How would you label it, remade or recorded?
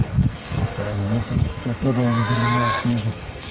remade